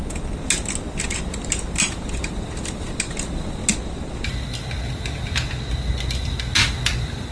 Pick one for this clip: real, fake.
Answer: real